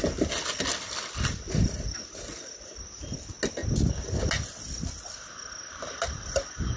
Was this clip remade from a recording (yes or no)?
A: no